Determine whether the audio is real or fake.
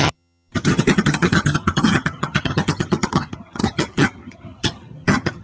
fake